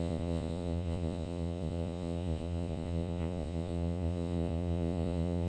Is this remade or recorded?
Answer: remade